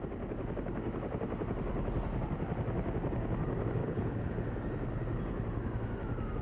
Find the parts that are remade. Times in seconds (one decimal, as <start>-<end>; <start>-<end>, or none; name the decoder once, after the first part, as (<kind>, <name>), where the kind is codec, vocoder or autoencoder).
3.8-4.3 (codec, HILCodec)

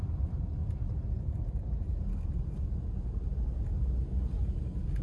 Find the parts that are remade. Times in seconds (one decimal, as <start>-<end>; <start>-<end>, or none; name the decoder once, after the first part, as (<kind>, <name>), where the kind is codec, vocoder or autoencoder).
none